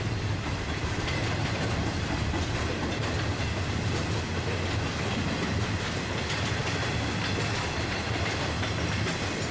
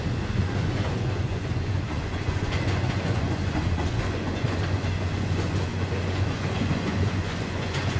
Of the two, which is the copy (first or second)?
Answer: second